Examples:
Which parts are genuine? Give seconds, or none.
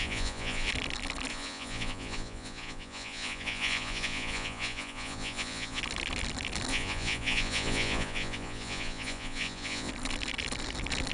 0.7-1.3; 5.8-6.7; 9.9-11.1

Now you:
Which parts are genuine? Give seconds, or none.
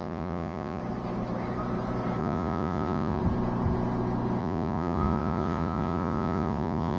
0.8-2.2; 3.2-4.4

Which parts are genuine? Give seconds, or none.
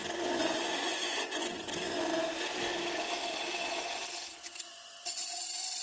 2.1-3.6